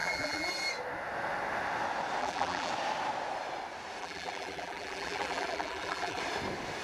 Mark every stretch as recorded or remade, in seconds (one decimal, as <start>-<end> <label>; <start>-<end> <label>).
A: 0.0-0.5 remade; 0.5-2.2 recorded; 2.2-2.7 remade; 2.7-4.0 recorded; 4.0-6.2 remade; 6.2-6.8 recorded